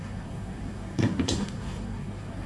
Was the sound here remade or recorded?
remade